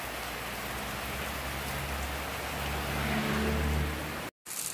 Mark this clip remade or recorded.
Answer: recorded